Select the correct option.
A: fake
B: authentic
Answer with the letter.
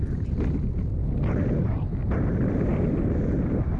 A